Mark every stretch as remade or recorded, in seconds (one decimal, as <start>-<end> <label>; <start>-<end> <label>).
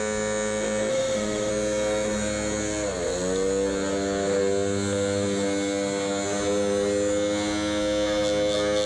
0.0-0.9 recorded; 0.9-1.5 remade; 1.5-8.9 recorded